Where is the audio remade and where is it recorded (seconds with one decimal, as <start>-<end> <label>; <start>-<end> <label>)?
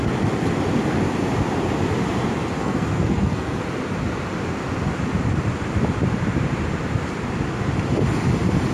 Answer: 0.0-2.6 recorded; 2.6-3.6 remade; 3.6-8.7 recorded